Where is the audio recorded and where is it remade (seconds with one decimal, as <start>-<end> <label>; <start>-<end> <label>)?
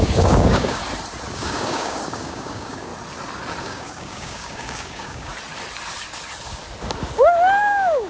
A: 0.0-0.8 remade; 0.8-1.3 recorded; 1.3-2.9 remade; 2.9-3.6 recorded; 3.6-5.3 remade; 5.3-7.6 recorded; 7.6-8.1 remade